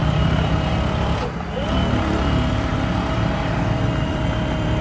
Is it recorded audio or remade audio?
remade